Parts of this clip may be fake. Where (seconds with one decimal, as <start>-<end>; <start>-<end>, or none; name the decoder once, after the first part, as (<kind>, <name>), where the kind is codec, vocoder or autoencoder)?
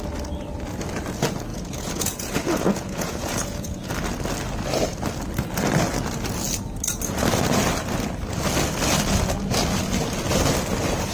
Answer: 1.5-3.9 (vocoder, Vocos)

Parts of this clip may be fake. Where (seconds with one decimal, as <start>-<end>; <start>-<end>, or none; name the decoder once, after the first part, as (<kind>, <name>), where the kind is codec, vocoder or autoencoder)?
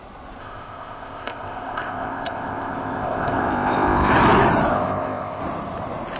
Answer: 0.4-4.1 (codec, ZipCodec); 4.7-5.4